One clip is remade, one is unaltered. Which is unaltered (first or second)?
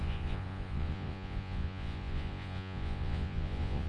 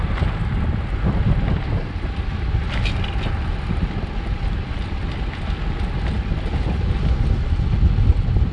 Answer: second